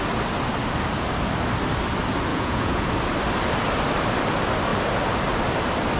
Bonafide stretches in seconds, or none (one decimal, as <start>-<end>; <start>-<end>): 0.0-2.3; 2.9-6.0